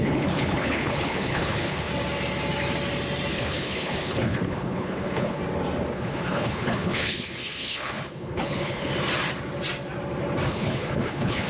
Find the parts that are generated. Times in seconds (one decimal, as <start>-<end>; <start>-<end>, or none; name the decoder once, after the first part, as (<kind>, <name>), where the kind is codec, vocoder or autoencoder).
0.0-1.9 (codec, HILCodec); 3.3-5.4; 5.9-8.9; 10.5-11.5